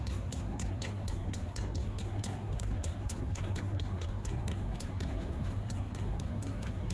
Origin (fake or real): fake